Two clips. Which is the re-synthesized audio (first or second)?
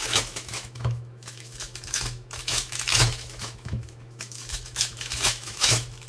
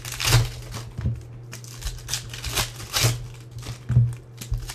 first